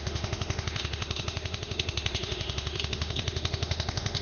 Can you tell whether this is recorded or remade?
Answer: remade